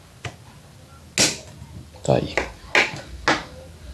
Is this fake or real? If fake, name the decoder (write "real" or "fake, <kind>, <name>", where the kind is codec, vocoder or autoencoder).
real